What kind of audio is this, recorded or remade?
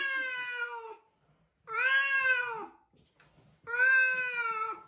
recorded